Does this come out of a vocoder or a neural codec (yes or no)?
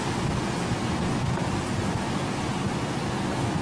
no